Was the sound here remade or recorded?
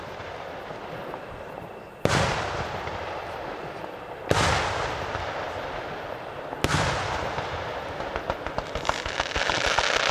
recorded